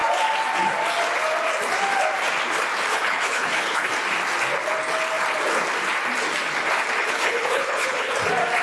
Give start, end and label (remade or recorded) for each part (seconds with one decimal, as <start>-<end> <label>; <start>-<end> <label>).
0.0-2.9 recorded; 2.9-3.9 remade; 3.9-7.0 recorded; 7.0-8.1 remade; 8.1-8.6 recorded